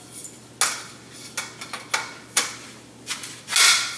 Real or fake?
real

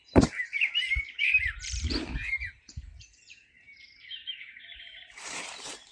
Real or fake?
fake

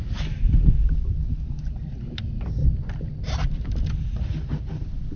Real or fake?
real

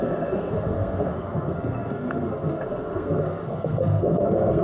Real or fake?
fake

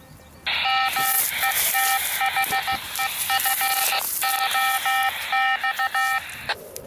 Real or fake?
real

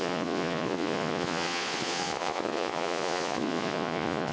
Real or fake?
fake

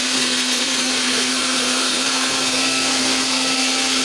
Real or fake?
fake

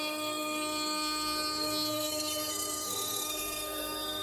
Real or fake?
fake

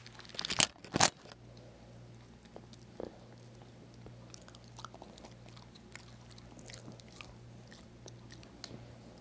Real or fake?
real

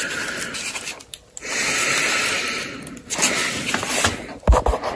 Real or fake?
real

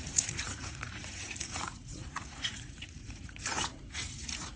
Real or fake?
fake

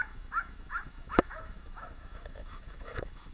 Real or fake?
fake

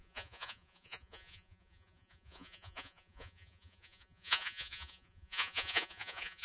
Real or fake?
fake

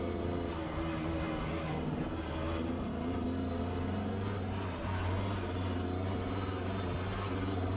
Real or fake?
real